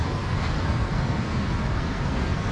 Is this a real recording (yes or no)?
no